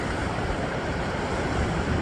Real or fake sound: fake